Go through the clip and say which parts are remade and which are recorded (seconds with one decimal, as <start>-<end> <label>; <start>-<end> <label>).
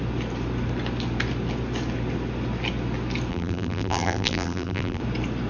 0.0-3.3 recorded; 3.3-5.0 remade; 5.0-5.5 recorded